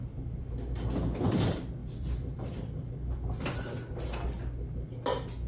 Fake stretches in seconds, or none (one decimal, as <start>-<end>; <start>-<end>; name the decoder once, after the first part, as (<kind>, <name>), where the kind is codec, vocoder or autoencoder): 1.8-3.5 (vocoder, BigVGAN v2)